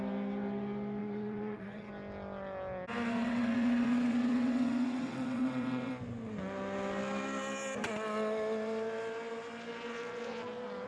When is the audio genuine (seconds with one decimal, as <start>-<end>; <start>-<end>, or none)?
0.0-1.0; 1.9-3.2; 5.9-10.9